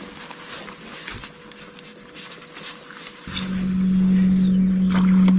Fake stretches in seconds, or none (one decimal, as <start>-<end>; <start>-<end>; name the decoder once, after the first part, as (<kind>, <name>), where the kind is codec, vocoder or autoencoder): none

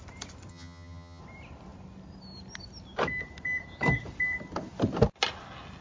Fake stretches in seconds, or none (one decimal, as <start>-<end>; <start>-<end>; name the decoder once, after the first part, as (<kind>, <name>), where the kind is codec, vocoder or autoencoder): 0.5-1.2 (vocoder, HiFi-GAN)

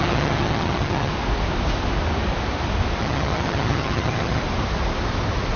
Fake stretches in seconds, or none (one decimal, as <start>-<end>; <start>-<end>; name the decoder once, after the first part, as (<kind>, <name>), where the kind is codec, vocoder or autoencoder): 0.0-1.1 (vocoder, HiFi-GAN); 3.0-4.4

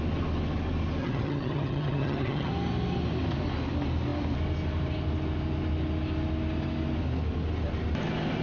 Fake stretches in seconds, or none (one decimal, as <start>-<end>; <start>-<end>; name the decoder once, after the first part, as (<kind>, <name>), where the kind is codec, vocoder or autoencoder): 1.0-2.5 (vocoder, HiFi-GAN)

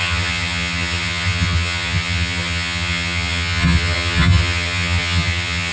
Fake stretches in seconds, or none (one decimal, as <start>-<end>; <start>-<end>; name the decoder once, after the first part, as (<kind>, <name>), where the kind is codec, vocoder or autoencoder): 0.0-5.7 (vocoder, HiFi-GAN)

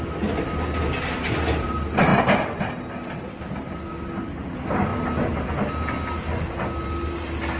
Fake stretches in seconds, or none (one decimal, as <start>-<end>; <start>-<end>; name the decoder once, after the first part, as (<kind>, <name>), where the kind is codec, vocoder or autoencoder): none

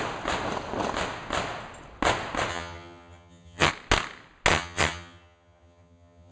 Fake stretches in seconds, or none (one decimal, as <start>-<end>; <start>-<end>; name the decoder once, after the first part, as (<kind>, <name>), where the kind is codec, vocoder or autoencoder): 2.5-3.7 (vocoder, HiFi-GAN); 4.5-6.3